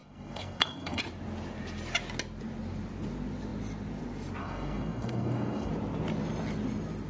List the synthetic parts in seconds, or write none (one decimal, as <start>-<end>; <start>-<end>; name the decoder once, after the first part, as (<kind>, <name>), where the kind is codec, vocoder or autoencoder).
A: 0.0-1.0 (codec, SNAC); 4.4-5.7

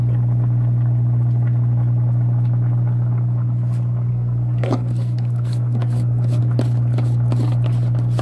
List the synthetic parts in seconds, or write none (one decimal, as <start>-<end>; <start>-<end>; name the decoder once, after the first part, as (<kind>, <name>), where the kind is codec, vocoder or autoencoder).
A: 4.1-6.4 (codec, SNAC)

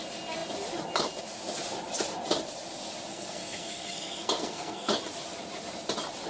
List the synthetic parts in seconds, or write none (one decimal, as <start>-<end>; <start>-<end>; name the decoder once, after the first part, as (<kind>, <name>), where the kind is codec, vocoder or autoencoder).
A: 3.1-4.9 (codec, SNAC)